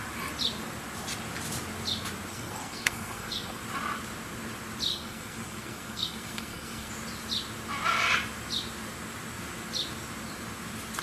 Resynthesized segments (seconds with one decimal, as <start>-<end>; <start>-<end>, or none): 2.3-3.6; 4.9-6.9